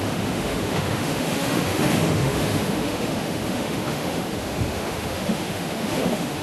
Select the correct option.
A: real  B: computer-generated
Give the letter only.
B